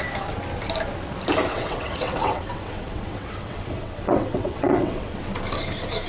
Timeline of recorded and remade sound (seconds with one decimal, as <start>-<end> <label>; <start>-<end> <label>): 0.0-1.5 recorded; 1.5-5.2 remade; 5.2-6.1 recorded